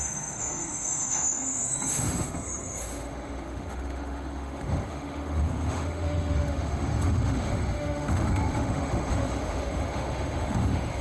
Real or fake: fake